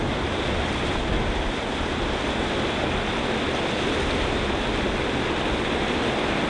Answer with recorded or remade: recorded